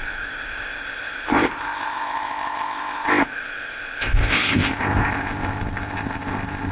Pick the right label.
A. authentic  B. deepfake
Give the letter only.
B